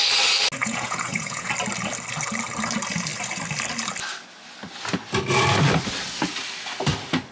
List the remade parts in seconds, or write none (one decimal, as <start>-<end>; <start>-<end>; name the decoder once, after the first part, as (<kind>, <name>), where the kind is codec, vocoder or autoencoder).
0.6-1.5 (vocoder, Vocos)